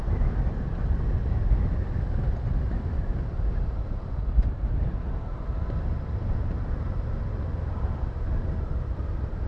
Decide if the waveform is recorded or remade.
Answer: recorded